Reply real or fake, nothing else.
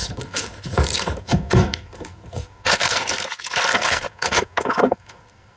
fake